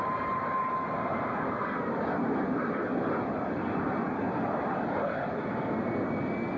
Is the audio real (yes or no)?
yes